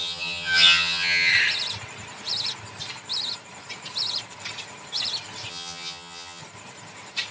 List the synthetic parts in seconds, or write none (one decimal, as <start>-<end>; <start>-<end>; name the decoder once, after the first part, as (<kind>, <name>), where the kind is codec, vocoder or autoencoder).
0.0-1.3 (vocoder, HiFi-GAN); 5.5-6.4